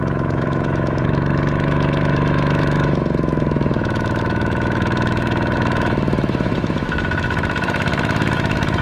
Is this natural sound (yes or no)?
no